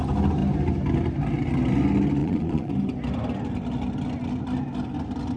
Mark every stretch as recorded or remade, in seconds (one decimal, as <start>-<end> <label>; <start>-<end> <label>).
0.0-2.2 recorded; 2.2-2.7 remade; 2.7-5.4 recorded